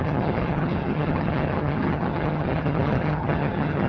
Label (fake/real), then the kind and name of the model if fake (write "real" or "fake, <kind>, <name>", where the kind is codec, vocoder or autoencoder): fake, vocoder, HiFi-GAN